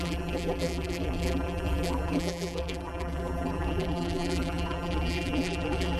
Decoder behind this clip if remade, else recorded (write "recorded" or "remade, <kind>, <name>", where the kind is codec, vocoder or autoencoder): remade, vocoder, BigVGAN v2